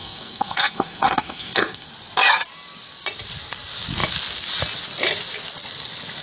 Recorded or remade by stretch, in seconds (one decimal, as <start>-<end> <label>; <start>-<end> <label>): 0.0-1.9 remade; 1.9-6.2 recorded